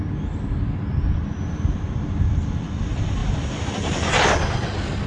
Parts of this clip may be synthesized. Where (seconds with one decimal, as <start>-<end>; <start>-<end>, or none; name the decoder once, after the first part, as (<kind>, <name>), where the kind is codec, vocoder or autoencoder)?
none